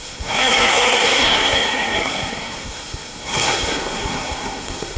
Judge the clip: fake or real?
fake